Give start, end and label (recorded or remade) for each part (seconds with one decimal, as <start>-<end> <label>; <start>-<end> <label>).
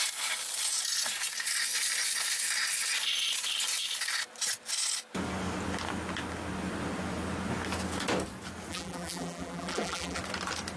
0.0-8.7 recorded; 8.7-10.2 remade; 10.2-10.8 recorded